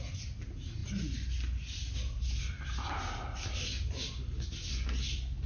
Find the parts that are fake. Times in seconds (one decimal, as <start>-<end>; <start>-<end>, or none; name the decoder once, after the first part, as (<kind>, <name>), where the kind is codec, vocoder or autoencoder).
none